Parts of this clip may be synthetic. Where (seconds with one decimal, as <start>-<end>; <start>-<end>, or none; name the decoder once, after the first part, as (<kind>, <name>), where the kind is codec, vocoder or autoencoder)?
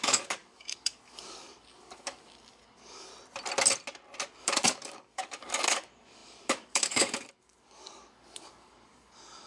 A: 0.0-3.1 (codec, DAC); 4.4-9.5